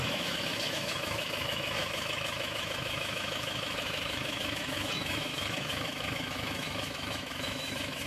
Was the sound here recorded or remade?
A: remade